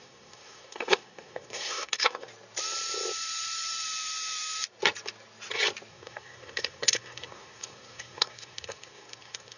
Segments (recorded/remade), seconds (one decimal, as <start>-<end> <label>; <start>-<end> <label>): 0.0-2.3 remade; 2.3-5.9 recorded; 5.9-9.6 remade